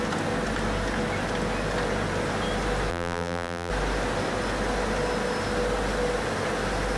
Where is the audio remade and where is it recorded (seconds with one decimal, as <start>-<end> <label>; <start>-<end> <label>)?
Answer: 0.0-2.9 recorded; 2.9-3.7 remade; 3.7-7.0 recorded